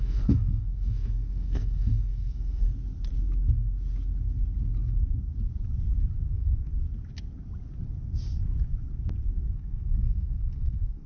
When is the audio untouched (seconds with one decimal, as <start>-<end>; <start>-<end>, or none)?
2.7-6.3; 6.7-9.5